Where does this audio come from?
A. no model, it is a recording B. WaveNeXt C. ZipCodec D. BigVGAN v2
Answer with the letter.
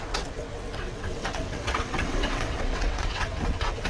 B